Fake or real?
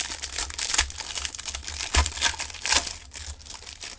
real